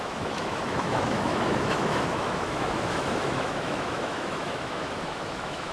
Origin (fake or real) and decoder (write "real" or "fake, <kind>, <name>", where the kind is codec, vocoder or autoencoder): fake, autoencoder, DAC-VAE